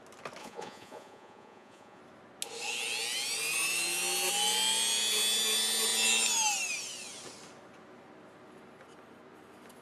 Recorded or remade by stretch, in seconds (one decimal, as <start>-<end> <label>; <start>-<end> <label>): 0.0-0.4 recorded; 0.4-2.0 remade; 2.0-9.8 recorded